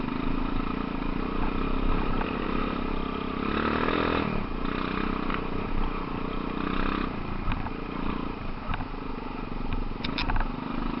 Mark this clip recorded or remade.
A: recorded